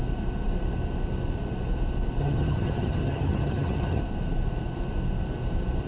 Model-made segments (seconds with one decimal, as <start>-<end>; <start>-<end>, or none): 2.2-4.0